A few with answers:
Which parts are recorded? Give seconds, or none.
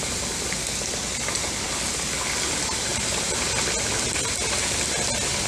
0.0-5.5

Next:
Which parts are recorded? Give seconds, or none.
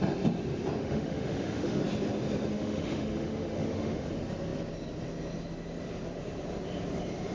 0.0-0.8; 1.8-2.5; 4.1-7.3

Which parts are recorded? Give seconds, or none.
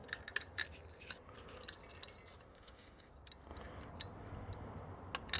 0.0-2.5; 3.1-5.4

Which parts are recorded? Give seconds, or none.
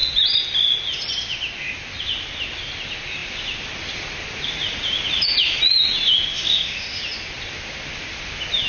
0.0-6.3; 7.0-8.7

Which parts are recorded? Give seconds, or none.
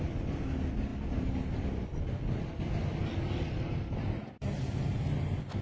0.0-5.6